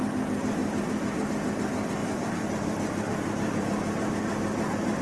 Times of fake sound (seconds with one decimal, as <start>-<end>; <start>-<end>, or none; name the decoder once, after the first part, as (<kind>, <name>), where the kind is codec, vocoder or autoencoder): 0.6-1.3 (vocoder, BigVGAN v2); 2.0-5.0